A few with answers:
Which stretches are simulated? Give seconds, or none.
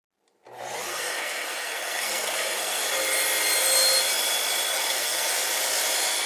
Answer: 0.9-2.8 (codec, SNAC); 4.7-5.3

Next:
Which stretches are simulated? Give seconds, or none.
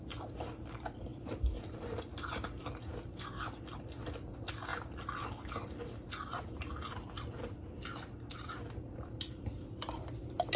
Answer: none